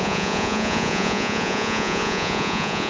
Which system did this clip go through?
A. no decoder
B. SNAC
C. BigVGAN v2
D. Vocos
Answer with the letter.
D